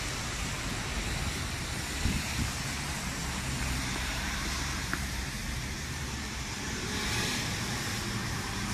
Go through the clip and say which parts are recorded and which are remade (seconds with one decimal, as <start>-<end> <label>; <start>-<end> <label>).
0.0-0.9 remade; 0.9-2.1 recorded; 2.1-8.7 remade